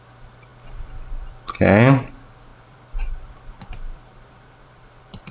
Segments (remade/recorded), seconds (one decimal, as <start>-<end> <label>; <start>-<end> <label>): 0.0-0.5 recorded; 0.5-2.1 remade; 2.1-2.5 recorded; 2.5-5.3 remade